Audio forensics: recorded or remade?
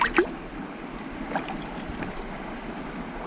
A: recorded